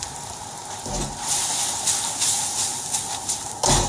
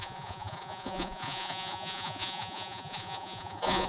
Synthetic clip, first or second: second